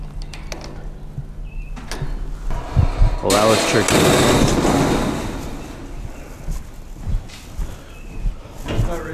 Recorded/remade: recorded